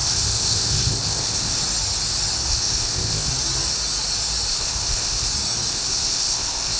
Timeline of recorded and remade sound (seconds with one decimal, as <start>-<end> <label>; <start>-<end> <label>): 0.0-1.6 remade; 1.6-2.5 recorded; 2.5-3.3 remade; 3.3-4.5 recorded; 4.5-5.3 remade; 5.3-5.7 recorded; 5.7-6.8 remade